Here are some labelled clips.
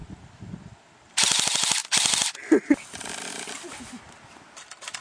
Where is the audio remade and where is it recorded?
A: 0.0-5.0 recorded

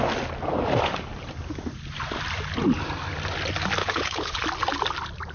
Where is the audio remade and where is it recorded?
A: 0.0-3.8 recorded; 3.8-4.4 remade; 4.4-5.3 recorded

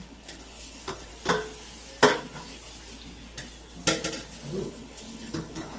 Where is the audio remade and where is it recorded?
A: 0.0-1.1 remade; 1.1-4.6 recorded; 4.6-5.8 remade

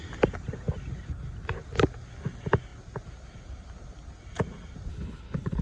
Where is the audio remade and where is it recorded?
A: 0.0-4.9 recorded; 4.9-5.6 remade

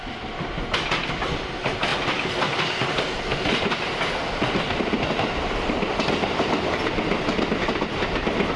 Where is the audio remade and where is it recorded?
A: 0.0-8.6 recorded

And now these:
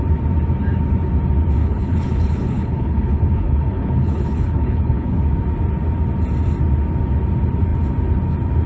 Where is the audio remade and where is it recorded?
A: 0.0-1.6 recorded; 1.6-5.2 remade; 5.2-8.7 recorded

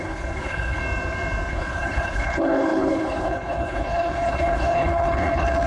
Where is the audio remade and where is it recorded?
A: 0.0-0.8 remade; 0.8-1.5 recorded; 1.5-5.7 remade

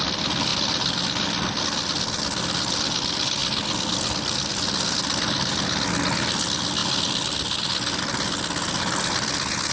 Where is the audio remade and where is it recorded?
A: 0.0-9.7 recorded